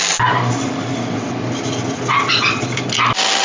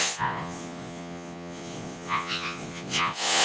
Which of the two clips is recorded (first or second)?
first